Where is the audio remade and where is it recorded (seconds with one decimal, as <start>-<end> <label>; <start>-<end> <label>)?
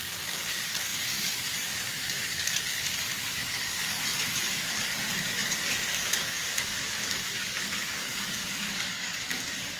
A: 0.0-9.8 remade